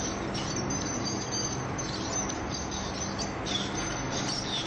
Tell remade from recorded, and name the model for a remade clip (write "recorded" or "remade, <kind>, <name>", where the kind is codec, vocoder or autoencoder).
recorded